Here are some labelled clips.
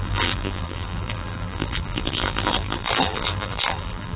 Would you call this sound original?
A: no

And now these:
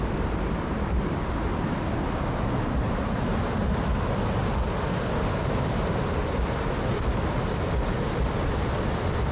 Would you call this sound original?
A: yes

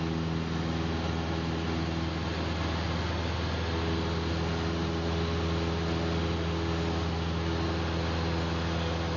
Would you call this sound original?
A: yes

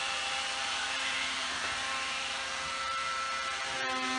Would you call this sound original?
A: no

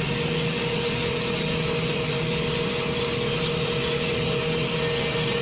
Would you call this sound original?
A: yes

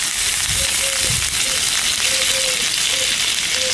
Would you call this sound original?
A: yes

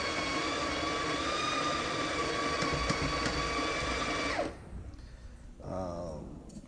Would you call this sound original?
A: yes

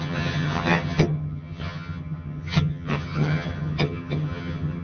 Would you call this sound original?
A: no